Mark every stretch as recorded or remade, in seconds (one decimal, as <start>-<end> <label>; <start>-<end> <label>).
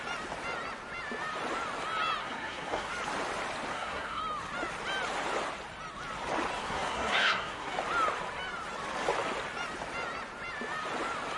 0.0-2.2 recorded; 2.2-2.9 remade; 2.9-3.7 recorded; 3.7-4.2 remade; 4.2-6.6 recorded; 6.6-7.7 remade; 7.7-11.4 recorded